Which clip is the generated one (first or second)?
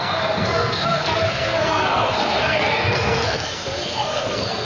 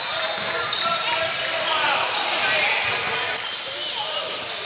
first